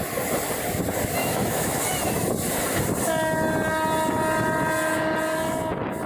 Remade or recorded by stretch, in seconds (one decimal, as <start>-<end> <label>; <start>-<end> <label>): 0.0-1.2 recorded; 1.2-1.8 remade; 1.8-6.1 recorded